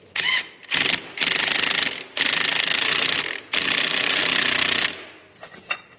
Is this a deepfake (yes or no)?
no